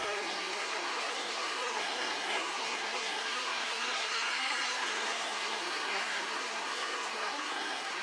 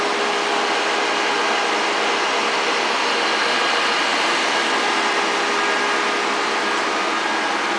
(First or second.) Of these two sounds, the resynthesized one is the first